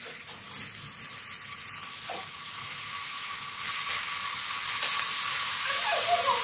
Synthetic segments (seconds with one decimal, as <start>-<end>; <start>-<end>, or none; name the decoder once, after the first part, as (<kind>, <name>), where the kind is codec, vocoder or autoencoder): 2.2-3.6 (autoencoder, DAC-VAE); 5.3-6.0